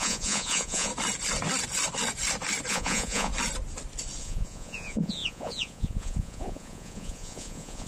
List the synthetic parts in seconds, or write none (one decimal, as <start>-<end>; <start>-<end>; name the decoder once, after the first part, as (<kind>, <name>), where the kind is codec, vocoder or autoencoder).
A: 0.0-0.9 (vocoder, Vocos); 2.7-3.3; 4.2-7.9